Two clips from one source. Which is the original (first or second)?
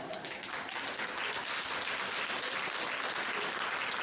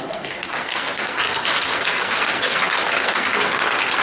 first